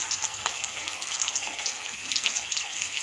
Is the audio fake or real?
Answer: fake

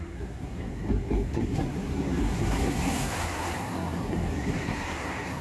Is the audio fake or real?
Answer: fake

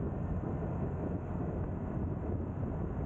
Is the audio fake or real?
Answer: real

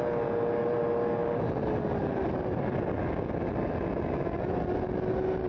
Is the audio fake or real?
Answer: real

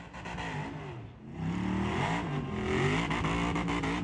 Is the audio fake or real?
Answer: real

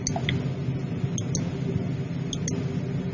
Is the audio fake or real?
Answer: real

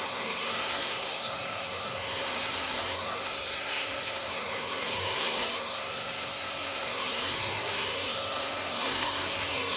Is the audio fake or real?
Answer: fake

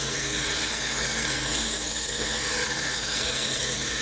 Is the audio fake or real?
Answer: fake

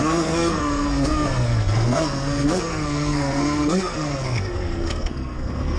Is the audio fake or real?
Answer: fake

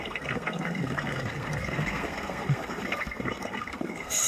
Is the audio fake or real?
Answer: fake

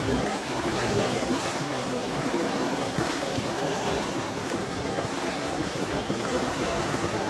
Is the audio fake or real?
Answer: fake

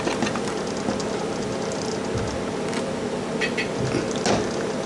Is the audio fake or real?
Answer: real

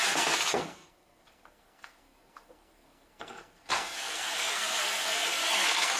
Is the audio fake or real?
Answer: fake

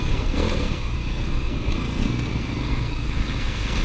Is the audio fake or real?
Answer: fake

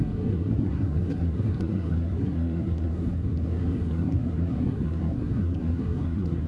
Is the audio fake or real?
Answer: fake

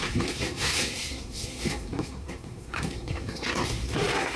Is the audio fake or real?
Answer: fake